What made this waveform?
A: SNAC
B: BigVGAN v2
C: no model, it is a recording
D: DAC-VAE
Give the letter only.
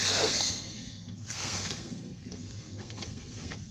A